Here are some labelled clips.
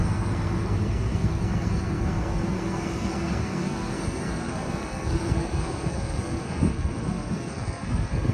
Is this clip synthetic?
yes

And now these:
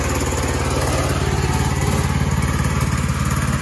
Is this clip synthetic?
no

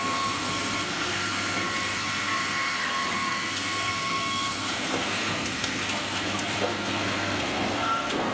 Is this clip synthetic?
yes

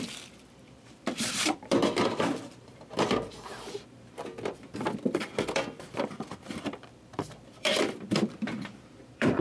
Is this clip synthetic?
yes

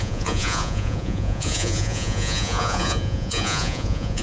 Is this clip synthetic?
yes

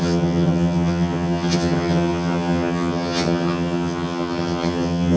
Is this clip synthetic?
yes